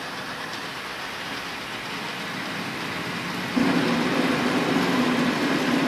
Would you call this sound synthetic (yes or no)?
no